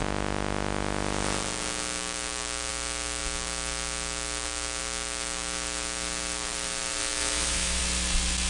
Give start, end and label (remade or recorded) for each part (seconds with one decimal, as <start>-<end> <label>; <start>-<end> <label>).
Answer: 0.0-7.0 recorded; 7.0-7.8 remade; 7.8-8.5 recorded